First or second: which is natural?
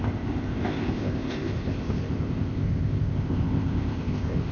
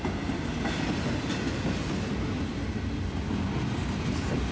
second